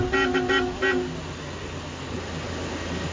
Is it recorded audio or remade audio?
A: recorded